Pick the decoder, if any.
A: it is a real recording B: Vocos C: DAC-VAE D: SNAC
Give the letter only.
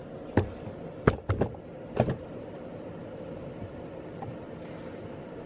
A